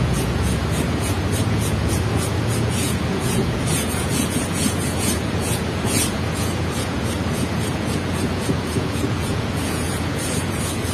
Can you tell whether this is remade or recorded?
remade